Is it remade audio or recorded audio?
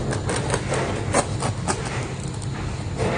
recorded